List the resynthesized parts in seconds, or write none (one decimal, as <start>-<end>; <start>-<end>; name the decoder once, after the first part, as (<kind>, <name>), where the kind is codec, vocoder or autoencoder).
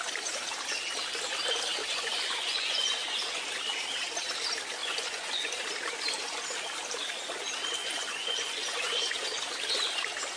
1.8-3.4 (vocoder, Vocos); 4.8-5.6; 7.8-9.4